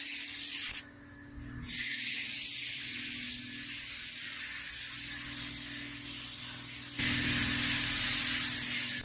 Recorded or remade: recorded